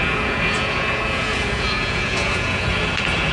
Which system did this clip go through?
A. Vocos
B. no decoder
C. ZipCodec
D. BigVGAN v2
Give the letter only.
A